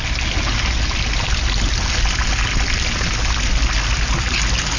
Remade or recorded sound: recorded